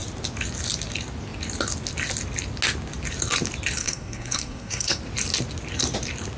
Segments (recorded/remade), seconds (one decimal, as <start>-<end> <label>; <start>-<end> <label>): 0.0-3.8 recorded; 3.8-5.0 remade; 5.0-6.4 recorded